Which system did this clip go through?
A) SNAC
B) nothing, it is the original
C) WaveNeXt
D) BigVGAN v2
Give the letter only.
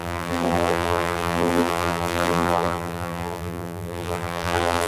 D